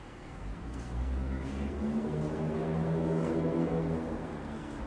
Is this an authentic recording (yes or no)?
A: no